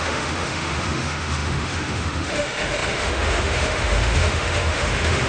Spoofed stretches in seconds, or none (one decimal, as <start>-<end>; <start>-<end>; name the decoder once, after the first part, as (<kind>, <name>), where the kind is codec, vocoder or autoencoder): 0.0-5.3 (autoencoder, DAC-VAE)